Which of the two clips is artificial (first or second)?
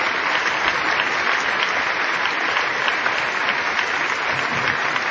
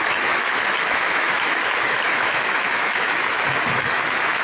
second